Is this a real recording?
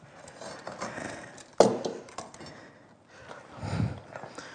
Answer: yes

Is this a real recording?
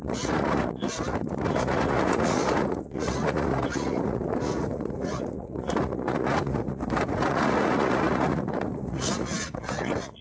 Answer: no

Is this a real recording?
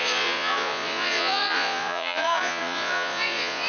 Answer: no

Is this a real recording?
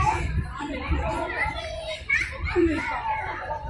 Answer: no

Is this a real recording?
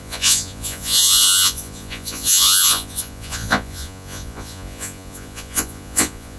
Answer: no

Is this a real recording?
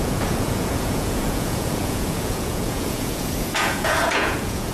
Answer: no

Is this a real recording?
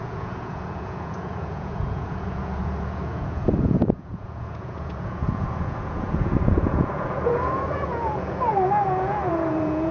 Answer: no